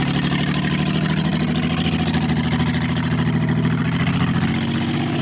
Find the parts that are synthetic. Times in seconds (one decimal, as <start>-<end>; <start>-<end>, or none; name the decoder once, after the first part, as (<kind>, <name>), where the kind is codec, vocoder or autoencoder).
none